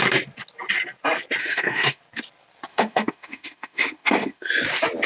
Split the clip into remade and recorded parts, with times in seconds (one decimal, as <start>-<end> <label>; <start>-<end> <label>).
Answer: 0.0-1.4 recorded; 1.4-2.0 remade; 2.0-2.7 recorded; 2.7-4.5 remade; 4.5-5.1 recorded